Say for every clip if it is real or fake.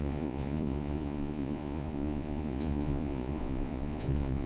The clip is fake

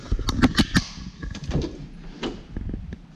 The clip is real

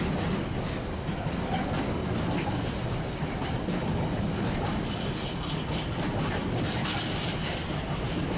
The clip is real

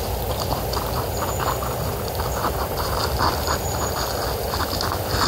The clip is real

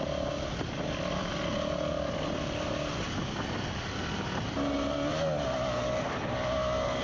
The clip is real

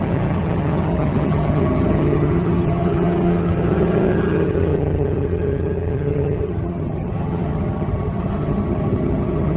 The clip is fake